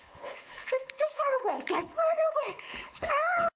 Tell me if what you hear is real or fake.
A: fake